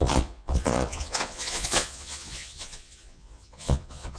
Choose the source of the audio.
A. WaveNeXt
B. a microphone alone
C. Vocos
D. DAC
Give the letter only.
C